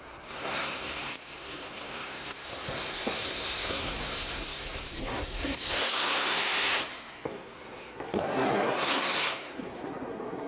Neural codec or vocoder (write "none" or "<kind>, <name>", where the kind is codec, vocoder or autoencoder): codec, SNAC